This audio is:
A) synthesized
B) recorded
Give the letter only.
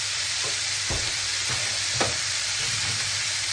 A